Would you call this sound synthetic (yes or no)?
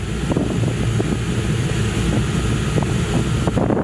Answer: no